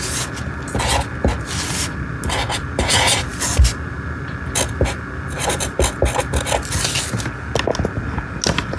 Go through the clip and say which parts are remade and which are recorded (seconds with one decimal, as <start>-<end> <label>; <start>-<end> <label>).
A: 0.0-8.8 recorded